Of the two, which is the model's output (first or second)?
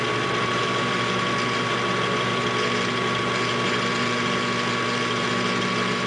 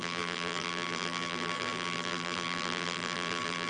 second